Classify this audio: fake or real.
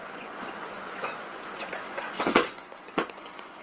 fake